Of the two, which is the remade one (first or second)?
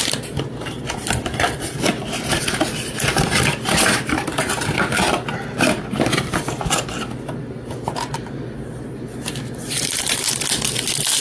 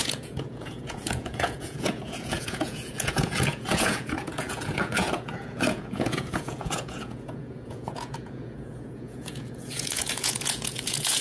second